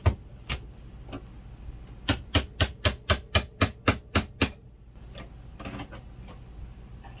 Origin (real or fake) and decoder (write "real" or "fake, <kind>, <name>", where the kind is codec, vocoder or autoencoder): real